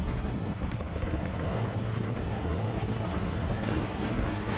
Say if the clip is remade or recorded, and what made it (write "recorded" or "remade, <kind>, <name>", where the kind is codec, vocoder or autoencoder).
remade, codec, SNAC